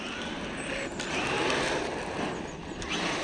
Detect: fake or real real